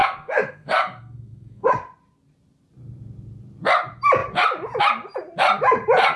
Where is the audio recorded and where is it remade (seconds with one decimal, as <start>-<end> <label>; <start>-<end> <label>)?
0.0-1.7 remade; 1.7-6.2 recorded